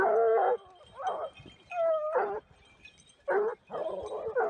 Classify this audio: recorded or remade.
recorded